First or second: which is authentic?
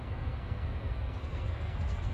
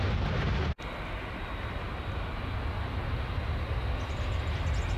second